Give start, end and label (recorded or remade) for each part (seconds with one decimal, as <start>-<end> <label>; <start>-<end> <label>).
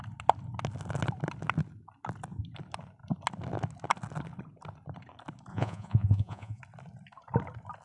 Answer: 0.0-5.5 recorded; 5.5-6.6 remade; 6.6-7.8 recorded